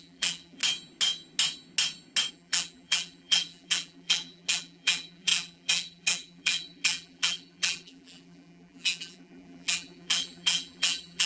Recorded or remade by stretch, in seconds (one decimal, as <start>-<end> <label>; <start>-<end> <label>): 0.0-0.6 remade; 0.6-2.3 recorded; 2.3-11.3 remade